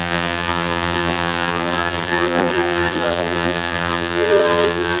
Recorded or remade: remade